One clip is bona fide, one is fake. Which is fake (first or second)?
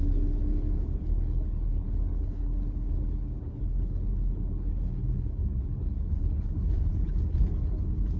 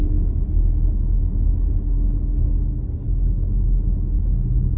first